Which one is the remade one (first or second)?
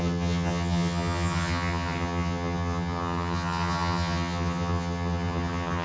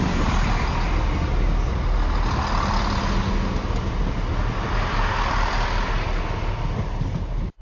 first